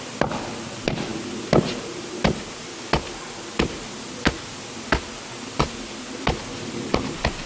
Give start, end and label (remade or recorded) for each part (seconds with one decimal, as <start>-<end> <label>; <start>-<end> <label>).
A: 0.0-7.5 recorded